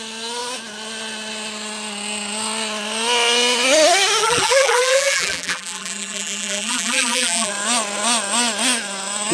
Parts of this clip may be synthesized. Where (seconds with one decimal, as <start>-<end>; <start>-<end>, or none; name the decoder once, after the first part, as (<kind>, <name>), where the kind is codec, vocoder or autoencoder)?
4.2-7.5 (vocoder, BigVGAN v2)